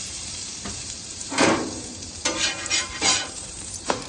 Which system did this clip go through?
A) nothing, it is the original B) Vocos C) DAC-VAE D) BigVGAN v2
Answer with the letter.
D